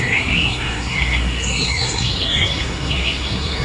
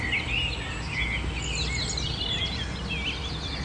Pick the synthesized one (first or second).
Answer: first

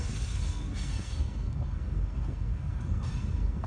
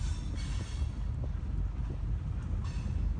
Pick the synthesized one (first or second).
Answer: first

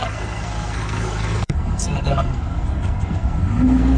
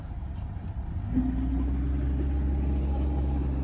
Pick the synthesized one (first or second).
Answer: first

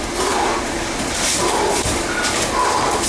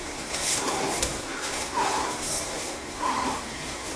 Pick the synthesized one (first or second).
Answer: second